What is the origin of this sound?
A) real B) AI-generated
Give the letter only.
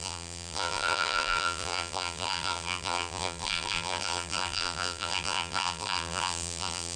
B